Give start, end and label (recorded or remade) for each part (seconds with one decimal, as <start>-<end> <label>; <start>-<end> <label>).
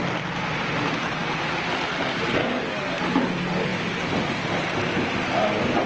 0.0-2.4 recorded; 2.4-3.0 remade; 3.0-5.9 recorded